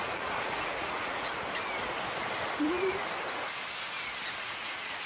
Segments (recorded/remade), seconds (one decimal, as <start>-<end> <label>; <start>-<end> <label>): 0.0-1.3 remade; 1.3-4.4 recorded; 4.4-5.1 remade